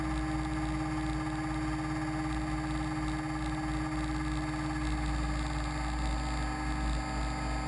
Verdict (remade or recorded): recorded